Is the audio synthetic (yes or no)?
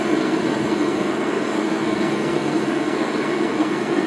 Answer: yes